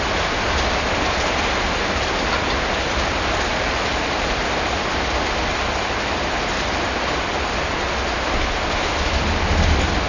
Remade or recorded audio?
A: recorded